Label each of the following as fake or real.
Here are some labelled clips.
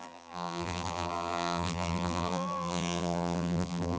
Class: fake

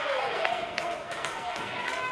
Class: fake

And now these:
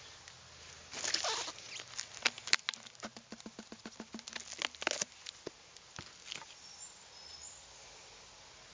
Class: real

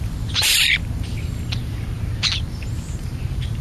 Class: fake